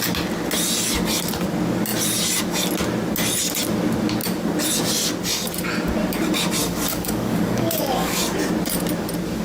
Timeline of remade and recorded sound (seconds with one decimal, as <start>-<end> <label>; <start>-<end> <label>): 0.0-6.6 recorded; 6.6-8.2 remade; 8.2-9.4 recorded